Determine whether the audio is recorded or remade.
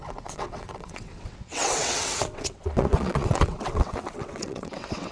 remade